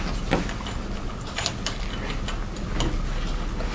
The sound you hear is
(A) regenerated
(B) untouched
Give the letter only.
B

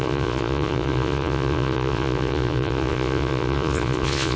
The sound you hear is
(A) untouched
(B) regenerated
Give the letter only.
B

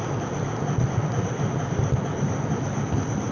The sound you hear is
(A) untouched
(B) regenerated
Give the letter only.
A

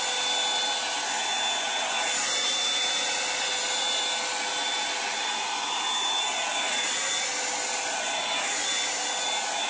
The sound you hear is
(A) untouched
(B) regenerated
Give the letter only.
A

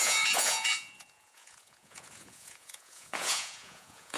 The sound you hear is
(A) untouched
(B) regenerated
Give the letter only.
B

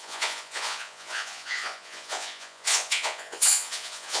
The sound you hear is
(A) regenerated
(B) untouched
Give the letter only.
A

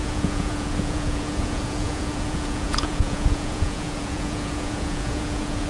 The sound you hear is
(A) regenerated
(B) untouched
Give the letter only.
A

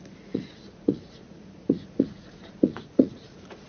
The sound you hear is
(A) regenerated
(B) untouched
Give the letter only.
A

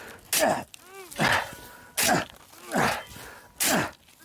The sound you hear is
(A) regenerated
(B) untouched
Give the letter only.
B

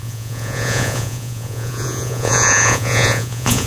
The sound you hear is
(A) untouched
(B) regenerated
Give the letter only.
B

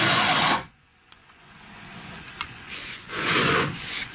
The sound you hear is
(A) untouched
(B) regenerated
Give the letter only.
B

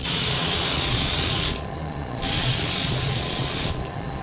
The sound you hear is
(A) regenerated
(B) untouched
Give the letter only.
A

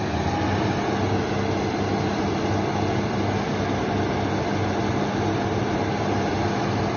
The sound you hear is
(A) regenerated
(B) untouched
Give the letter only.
B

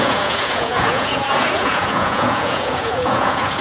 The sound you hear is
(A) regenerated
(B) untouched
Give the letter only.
A